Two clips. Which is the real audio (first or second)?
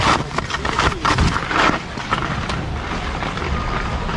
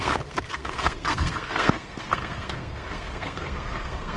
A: first